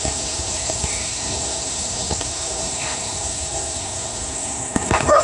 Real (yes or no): no